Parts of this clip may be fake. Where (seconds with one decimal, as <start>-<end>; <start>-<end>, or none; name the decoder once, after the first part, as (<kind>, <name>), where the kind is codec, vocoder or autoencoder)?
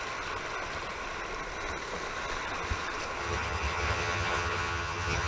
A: 3.2-5.3 (vocoder, HiFi-GAN)